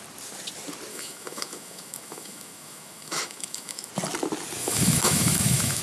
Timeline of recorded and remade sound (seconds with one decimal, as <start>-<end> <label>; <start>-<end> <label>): 0.0-0.9 recorded; 0.9-3.9 remade; 3.9-4.6 recorded; 4.6-5.8 remade